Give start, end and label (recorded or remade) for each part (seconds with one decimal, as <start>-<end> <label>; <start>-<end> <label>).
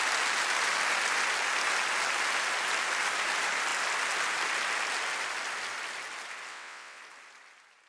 0.0-6.5 recorded; 6.5-7.0 remade; 7.0-7.9 recorded